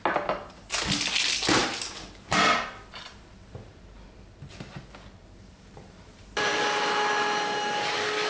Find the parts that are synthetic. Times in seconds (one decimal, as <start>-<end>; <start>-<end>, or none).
1.6-6.6